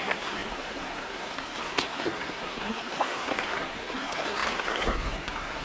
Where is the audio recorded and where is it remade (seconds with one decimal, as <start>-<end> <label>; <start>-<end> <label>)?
0.0-5.6 remade